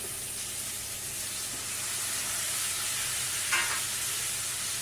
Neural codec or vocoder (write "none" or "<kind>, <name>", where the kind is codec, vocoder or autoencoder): none